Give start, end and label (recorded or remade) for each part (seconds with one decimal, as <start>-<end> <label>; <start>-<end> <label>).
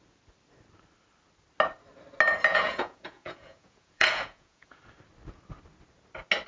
0.0-2.5 recorded; 2.5-4.8 remade; 4.8-6.5 recorded